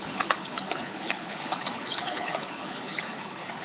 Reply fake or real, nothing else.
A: fake